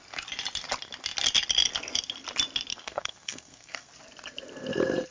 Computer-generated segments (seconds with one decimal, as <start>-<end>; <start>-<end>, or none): 2.7-3.9